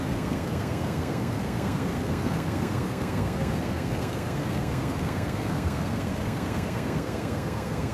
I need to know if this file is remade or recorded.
remade